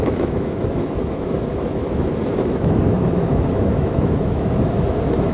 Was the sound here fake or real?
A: fake